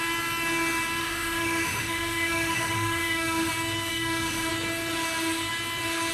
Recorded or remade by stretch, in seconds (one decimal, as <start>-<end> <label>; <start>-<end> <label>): 0.0-1.0 recorded; 1.0-3.5 remade; 3.5-3.9 recorded; 3.9-4.5 remade; 4.5-6.1 recorded